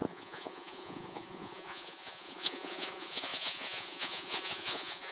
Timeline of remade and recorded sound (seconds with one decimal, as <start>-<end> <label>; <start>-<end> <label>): 0.0-5.1 remade